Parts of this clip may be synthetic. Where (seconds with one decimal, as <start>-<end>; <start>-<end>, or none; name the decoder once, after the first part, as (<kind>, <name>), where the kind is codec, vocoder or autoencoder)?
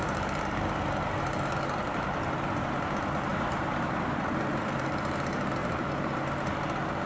3.3-4.9 (vocoder, BigVGAN v2); 5.6-6.2